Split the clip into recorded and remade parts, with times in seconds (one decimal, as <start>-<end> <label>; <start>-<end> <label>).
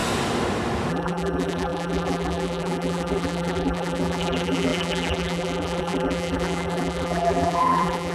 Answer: 0.0-0.9 recorded; 0.9-8.1 remade